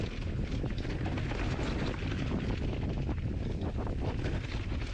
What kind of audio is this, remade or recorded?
recorded